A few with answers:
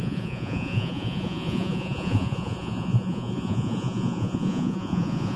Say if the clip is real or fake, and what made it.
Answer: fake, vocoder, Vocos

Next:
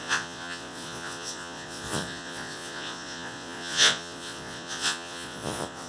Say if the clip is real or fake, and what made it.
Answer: fake, vocoder, Vocos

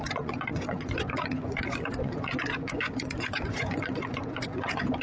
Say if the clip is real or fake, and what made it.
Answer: fake, vocoder, Vocos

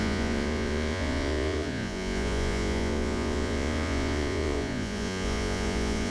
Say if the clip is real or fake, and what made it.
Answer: fake, vocoder, Vocos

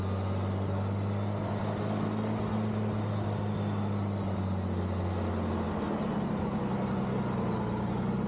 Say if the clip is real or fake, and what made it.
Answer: real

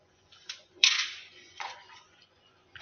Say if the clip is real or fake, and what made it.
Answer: fake, vocoder, Vocos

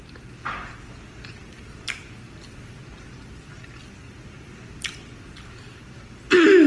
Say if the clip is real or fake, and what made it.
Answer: real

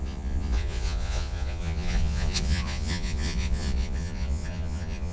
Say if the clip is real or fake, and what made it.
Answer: fake, vocoder, Vocos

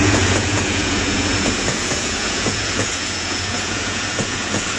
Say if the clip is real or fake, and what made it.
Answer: fake, vocoder, Vocos